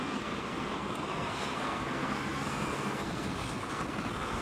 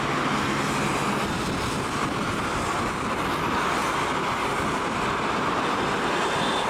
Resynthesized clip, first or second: first